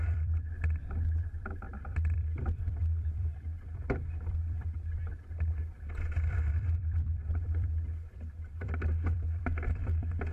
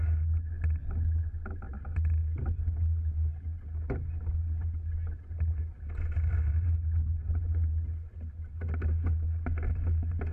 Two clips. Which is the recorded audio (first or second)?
second